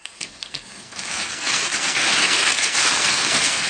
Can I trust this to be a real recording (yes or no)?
no